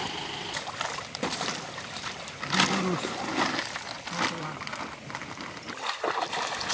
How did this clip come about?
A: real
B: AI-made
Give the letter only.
A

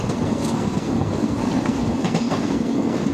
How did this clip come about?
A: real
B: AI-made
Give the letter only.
B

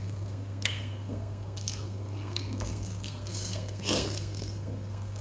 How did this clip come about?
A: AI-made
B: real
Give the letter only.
A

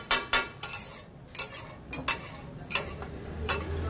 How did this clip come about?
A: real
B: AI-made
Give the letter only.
A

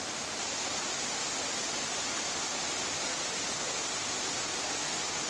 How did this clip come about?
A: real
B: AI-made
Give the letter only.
A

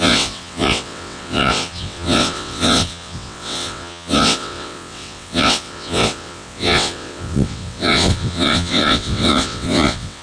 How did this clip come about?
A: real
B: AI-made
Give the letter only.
B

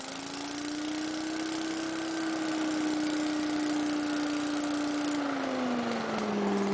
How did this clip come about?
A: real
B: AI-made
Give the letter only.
A